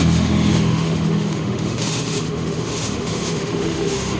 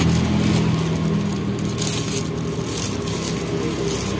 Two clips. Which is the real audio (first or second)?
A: second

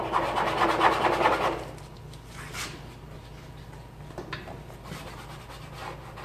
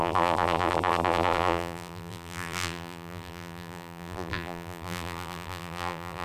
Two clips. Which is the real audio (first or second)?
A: first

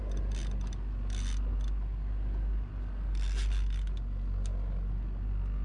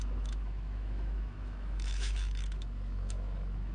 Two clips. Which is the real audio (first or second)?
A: first